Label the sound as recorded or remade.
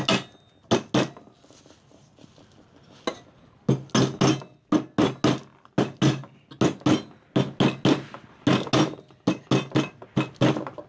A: recorded